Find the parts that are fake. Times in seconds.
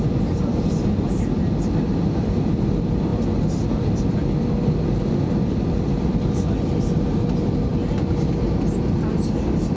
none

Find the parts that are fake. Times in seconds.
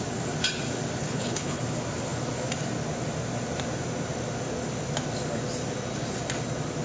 1.0-1.6 (codec, HILCodec)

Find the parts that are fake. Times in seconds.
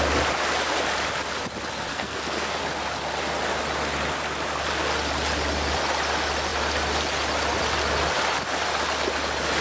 1.9-2.6 (codec, SNAC)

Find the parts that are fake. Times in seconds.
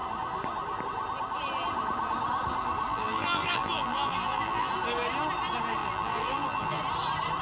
2.9-4.7 (vocoder, BigVGAN v2); 5.8-6.8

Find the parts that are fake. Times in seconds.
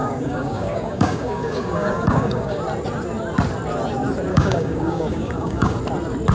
0.0-2.6 (codec, DAC); 4.3-5.8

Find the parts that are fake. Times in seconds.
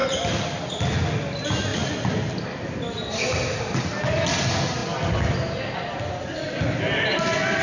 none